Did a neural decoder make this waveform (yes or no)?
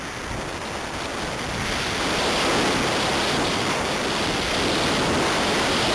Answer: no